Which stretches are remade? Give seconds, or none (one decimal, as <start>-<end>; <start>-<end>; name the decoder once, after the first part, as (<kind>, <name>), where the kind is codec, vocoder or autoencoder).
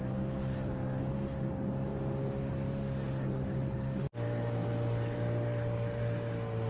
none